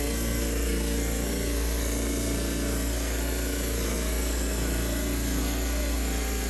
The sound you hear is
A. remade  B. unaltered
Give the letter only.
A